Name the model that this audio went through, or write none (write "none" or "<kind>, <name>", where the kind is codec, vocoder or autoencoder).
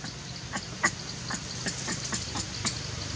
none